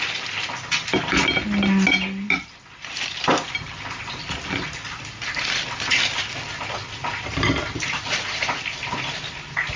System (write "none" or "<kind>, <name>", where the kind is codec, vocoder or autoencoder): none